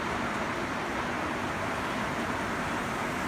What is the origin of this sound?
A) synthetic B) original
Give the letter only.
A